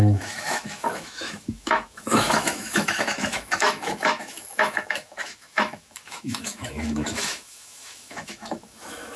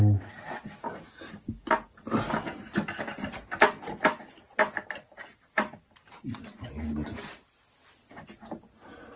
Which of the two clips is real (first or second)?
second